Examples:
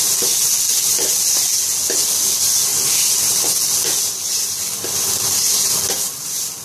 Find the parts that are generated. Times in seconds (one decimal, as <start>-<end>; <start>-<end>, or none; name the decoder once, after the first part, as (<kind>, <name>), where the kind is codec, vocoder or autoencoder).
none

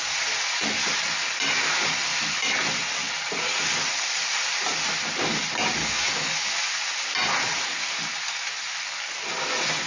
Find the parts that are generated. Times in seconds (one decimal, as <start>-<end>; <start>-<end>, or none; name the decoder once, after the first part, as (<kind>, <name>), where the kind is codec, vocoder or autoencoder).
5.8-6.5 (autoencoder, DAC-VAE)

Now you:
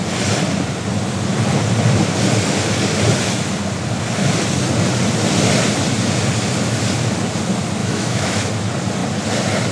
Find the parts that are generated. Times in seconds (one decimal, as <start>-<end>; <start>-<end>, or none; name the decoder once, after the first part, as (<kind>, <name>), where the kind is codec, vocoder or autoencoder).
7.8-8.5 (autoencoder, DAC-VAE)

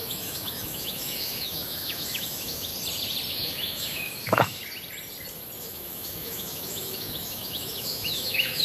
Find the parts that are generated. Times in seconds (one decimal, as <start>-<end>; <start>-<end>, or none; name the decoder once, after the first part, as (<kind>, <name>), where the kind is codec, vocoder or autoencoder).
0.0-2.7 (autoencoder, DAC-VAE); 3.3-4.6; 5.6-8.6

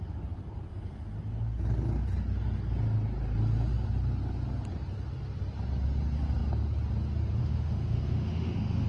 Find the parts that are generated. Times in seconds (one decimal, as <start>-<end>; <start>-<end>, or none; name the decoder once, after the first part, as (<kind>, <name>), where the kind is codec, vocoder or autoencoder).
7.4-8.9 (autoencoder, DAC-VAE)

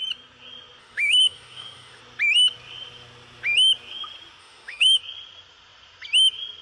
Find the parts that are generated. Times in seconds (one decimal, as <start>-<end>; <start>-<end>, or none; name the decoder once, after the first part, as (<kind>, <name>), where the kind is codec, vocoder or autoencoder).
0.8-2.0 (autoencoder, DAC-VAE); 4.4-5.0